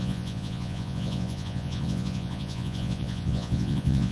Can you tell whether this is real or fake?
fake